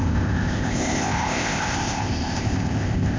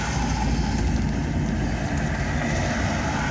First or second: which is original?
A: second